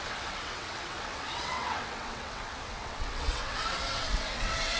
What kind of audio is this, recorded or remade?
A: remade